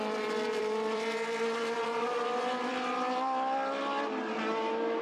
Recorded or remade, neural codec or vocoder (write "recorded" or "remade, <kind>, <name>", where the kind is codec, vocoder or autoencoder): remade, vocoder, BigVGAN v2